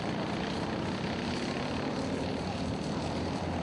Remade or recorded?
recorded